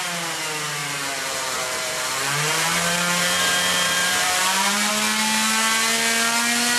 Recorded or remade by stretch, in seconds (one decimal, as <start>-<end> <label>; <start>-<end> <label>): 0.0-0.8 recorded; 0.8-4.9 remade; 4.9-6.8 recorded